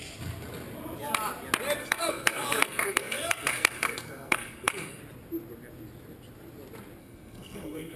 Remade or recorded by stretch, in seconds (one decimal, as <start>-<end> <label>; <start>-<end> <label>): 0.0-1.8 recorded; 1.8-5.0 remade; 5.0-7.0 recorded; 7.0-8.0 remade